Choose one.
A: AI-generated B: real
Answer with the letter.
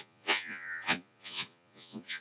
A